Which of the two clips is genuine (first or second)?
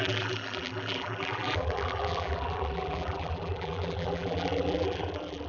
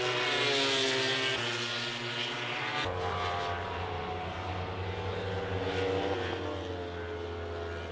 second